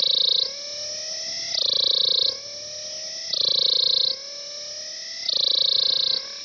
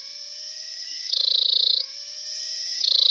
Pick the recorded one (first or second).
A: first